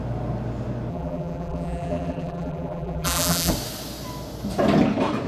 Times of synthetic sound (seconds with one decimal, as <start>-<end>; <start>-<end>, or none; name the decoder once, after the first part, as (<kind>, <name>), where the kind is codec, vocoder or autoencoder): 0.9-3.5 (vocoder, BigVGAN v2)